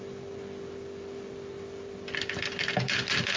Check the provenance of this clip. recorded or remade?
recorded